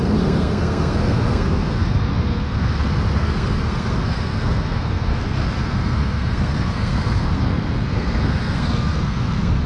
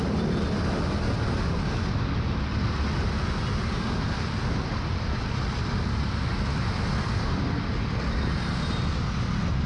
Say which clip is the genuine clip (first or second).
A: second